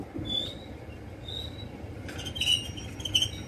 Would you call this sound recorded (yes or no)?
yes